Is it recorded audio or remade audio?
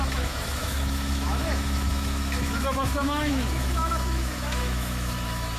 remade